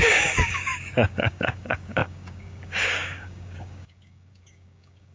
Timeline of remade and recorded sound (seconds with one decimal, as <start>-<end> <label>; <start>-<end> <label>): 0.0-5.1 remade